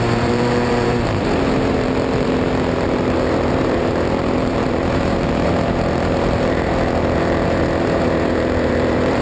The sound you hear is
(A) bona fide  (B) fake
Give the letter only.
B